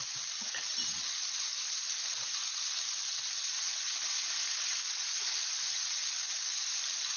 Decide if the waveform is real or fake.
real